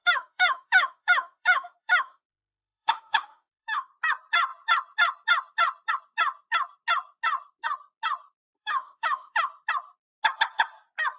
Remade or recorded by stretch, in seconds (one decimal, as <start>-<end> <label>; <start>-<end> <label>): 0.0-3.9 remade; 3.9-8.5 recorded; 8.5-9.5 remade; 9.5-11.2 recorded